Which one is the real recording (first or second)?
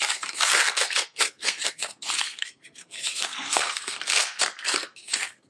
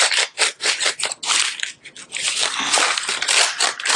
second